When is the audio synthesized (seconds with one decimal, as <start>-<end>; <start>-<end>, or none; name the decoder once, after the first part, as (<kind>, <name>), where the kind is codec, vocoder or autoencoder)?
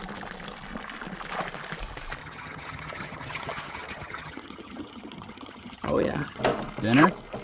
2.2-6.4 (vocoder, HiFi-GAN)